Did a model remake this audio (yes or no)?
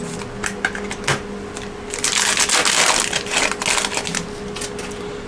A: no